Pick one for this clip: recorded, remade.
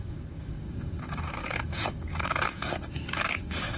remade